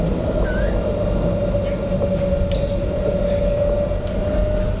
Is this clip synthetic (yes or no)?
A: no